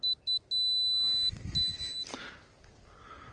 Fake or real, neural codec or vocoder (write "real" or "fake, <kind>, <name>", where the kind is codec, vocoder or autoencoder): real